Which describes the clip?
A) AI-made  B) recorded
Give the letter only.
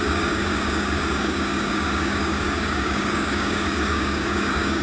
A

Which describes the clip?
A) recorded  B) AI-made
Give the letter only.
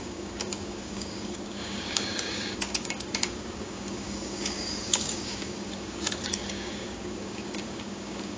B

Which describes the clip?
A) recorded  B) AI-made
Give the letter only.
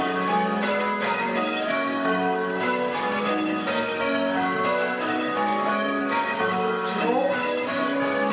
B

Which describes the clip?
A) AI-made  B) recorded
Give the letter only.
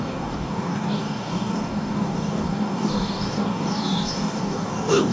A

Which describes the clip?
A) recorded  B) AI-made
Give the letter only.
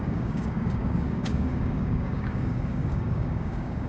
B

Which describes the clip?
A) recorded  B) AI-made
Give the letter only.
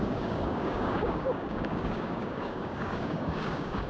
B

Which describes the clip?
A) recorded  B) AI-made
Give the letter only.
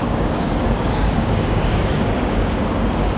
B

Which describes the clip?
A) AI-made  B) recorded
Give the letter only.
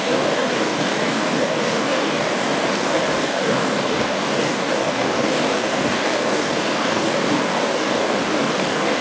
A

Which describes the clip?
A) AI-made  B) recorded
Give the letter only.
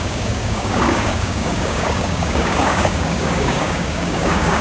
A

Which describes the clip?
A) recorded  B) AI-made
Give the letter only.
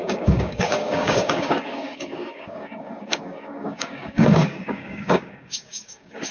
B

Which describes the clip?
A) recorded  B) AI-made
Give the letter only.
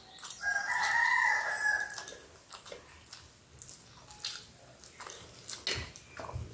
A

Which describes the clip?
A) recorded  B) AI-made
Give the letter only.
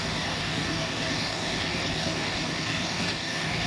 B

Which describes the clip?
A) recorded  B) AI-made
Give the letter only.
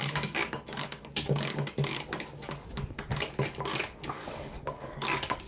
B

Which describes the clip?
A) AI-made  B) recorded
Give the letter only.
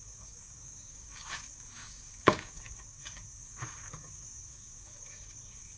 A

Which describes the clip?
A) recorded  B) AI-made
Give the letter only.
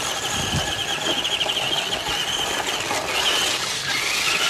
A